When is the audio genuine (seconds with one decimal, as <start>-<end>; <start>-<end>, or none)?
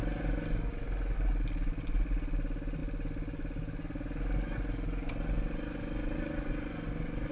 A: 0.0-7.3